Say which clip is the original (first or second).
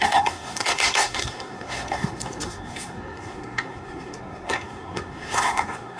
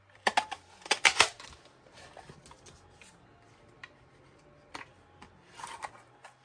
second